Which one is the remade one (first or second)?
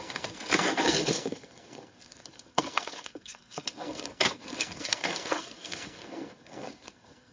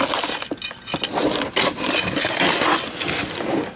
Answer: first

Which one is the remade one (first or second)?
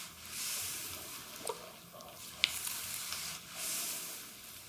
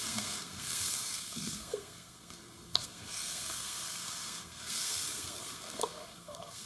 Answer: second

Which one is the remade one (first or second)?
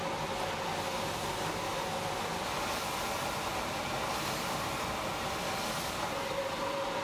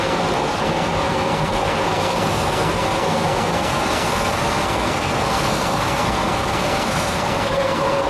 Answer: second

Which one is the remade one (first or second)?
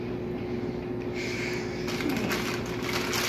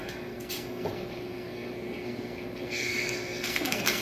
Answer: second